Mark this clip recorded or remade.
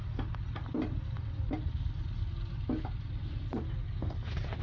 recorded